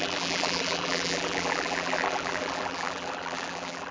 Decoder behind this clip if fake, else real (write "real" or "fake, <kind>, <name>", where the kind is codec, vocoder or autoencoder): fake, vocoder, BigVGAN v2